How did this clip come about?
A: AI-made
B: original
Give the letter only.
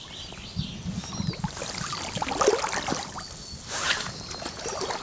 B